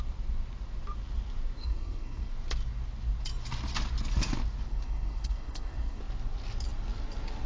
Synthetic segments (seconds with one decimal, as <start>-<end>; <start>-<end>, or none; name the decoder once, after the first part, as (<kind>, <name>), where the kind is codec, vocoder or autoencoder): 1.6-2.3 (codec, SNAC); 4.7-6.0